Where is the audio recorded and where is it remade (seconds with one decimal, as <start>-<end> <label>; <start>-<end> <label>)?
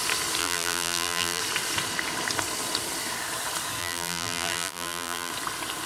0.0-0.4 recorded; 0.4-1.4 remade; 1.4-3.8 recorded; 3.8-5.3 remade; 5.3-5.9 recorded